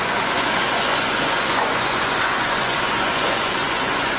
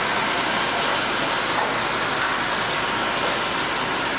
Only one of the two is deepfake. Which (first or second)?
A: first